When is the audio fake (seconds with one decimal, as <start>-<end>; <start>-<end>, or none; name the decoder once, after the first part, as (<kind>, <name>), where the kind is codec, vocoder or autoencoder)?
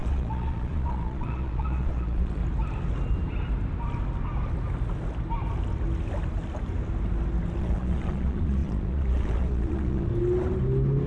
0.0-2.4 (vocoder, Vocos); 7.6-10.1